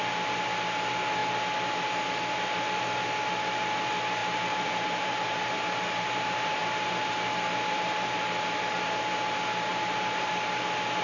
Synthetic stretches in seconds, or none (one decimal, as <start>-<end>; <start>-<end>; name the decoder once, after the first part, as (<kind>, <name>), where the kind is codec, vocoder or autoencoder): 4.2-7.1 (vocoder, BigVGAN v2); 9.7-10.3

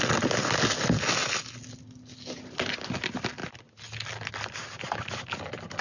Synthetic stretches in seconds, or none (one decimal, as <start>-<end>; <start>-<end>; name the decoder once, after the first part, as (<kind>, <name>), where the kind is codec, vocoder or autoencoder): none

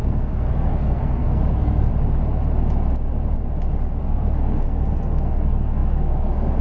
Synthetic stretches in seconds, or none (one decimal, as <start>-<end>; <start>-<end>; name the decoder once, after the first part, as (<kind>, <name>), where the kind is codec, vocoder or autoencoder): 0.0-1.9 (codec, SNAC); 4.0-6.6

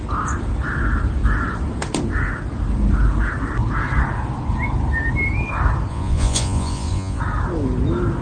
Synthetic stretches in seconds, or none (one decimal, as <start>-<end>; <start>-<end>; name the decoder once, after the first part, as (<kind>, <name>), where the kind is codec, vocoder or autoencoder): 5.9-7.2 (vocoder, Vocos)

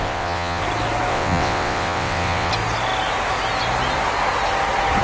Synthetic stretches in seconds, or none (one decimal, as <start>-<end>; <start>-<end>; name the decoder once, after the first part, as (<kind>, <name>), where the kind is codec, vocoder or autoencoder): 0.0-0.6 (vocoder, WaveNeXt); 1.1-2.5

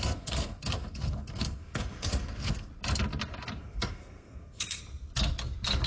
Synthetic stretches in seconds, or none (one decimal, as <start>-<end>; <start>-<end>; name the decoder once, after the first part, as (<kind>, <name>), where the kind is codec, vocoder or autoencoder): 0.0-2.7 (codec, SNAC); 3.6-4.8